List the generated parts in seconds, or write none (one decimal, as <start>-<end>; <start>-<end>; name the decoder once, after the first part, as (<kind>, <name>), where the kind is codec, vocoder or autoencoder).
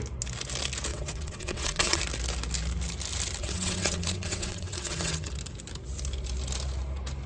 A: 0.9-2.0 (vocoder, WaveNeXt); 3.4-5.3